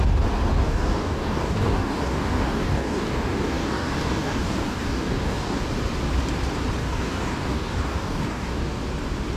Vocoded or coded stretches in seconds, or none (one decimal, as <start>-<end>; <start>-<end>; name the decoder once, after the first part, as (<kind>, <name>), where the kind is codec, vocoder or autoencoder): 0.5-5.6 (codec, DAC); 6.8-8.8